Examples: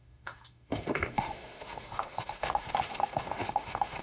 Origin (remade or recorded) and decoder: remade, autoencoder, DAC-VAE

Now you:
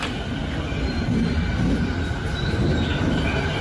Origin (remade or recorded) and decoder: recorded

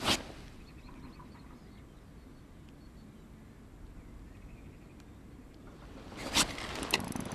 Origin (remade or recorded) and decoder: recorded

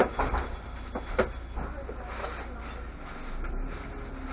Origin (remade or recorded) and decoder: recorded